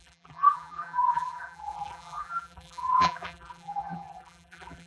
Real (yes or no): no